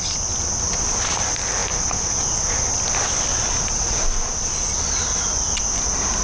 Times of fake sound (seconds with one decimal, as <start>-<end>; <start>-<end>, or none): none